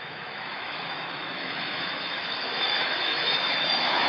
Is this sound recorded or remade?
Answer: remade